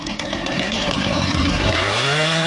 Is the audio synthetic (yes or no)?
yes